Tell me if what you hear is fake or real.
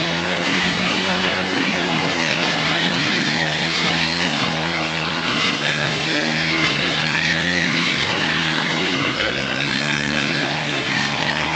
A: fake